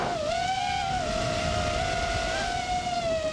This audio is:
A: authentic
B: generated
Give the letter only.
A